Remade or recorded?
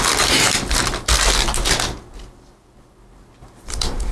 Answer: recorded